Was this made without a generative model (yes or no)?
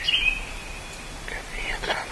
yes